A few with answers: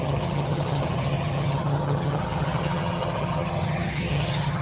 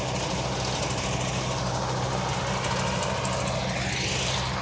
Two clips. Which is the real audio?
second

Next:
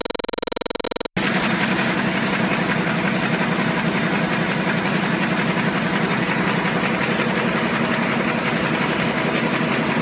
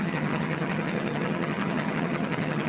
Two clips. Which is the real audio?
first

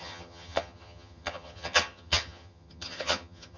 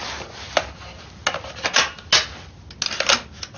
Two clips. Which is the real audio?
second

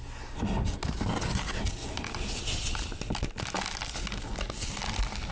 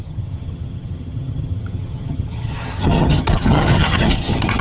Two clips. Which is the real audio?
first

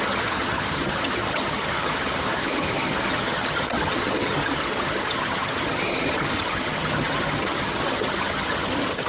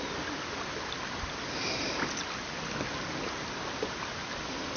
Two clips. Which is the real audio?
second